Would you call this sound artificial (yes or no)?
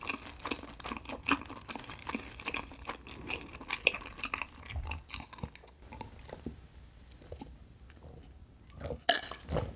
no